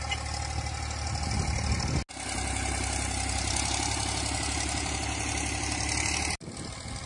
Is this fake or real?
real